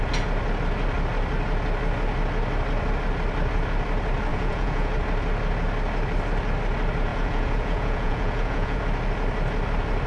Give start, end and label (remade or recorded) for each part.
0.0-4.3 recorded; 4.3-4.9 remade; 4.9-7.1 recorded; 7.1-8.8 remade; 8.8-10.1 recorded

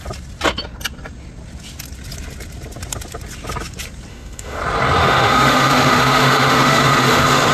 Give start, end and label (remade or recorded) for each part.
0.0-4.1 recorded; 4.1-4.6 remade; 4.6-5.0 recorded; 5.0-7.5 remade

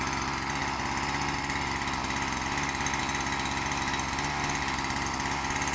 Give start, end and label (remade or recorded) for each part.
0.0-5.7 recorded

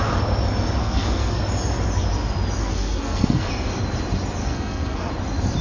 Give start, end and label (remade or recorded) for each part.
0.0-0.8 recorded; 0.8-1.4 remade; 1.4-2.6 recorded; 2.6-3.5 remade; 3.5-4.4 recorded; 4.4-5.1 remade; 5.1-5.6 recorded

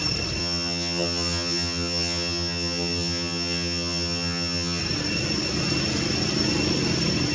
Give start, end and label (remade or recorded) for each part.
0.0-0.4 recorded; 0.4-4.8 remade; 4.8-7.3 recorded

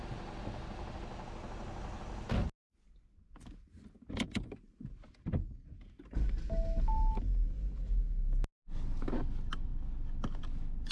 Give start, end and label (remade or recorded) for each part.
0.0-10.9 recorded

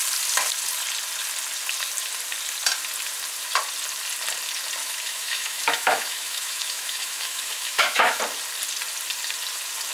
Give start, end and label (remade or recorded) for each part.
0.0-4.8 recorded; 4.8-8.2 remade; 8.2-9.9 recorded

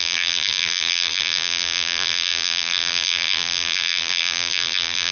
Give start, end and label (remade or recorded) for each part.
0.0-5.1 remade